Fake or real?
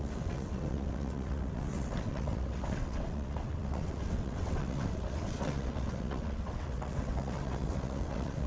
fake